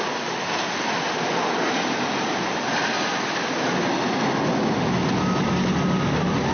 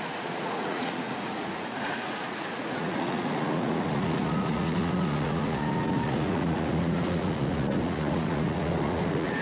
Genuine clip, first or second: first